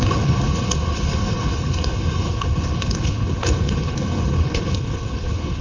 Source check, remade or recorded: remade